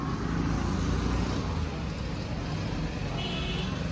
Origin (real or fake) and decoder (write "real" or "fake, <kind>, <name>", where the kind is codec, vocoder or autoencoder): real